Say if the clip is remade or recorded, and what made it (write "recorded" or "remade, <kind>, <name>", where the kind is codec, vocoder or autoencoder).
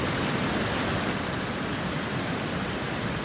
recorded